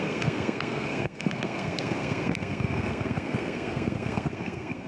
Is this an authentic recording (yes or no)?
no